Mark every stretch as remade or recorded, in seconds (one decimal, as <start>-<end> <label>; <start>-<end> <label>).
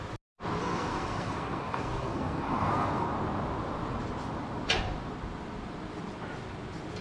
0.0-0.6 recorded; 0.6-3.1 remade; 3.1-7.0 recorded